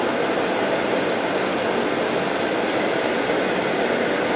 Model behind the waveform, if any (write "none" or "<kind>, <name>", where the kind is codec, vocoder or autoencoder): none